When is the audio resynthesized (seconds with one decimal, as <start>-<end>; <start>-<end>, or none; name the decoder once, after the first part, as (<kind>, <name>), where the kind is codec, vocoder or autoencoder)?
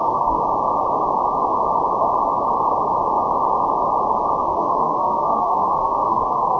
0.0-0.4 (codec, SNAC); 4.4-6.6